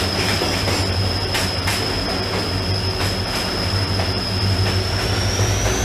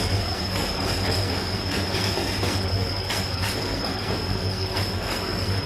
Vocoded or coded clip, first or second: second